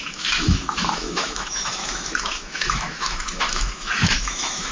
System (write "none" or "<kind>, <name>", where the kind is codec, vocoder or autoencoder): autoencoder, DAC-VAE